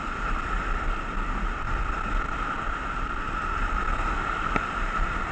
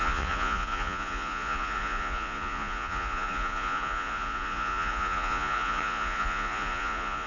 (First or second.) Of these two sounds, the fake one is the second